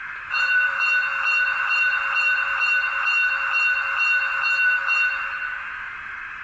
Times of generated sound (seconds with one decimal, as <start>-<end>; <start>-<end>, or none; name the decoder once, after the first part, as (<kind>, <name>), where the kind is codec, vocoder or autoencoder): 0.0-0.7 (vocoder, BigVGAN v2); 1.4-3.2; 6.0-6.4